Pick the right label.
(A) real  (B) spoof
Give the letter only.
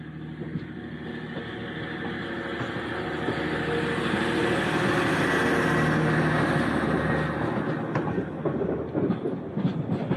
A